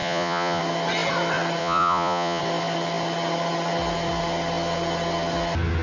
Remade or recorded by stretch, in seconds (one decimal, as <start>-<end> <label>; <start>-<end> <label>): 0.0-0.6 remade; 0.6-1.6 recorded; 1.6-2.4 remade; 2.4-5.8 recorded